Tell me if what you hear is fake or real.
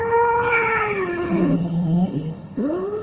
fake